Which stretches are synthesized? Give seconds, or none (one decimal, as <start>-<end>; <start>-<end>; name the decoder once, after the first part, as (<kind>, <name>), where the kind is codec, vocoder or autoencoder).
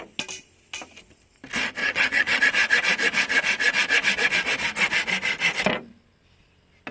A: 1.8-2.4 (vocoder, HiFi-GAN)